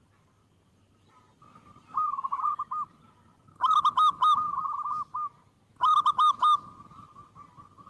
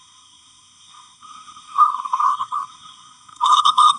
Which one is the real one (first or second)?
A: first